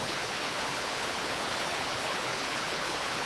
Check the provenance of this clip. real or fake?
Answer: fake